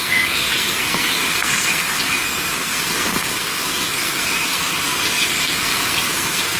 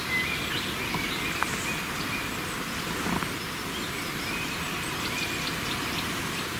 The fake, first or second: first